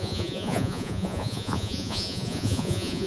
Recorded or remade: remade